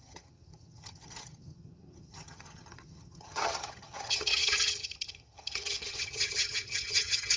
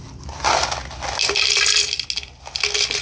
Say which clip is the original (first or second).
second